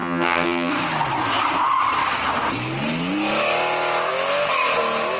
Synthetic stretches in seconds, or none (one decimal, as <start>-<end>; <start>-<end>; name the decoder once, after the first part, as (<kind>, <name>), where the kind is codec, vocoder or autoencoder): 0.0-0.7 (vocoder, HiFi-GAN)